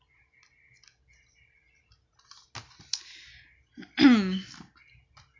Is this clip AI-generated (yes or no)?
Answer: no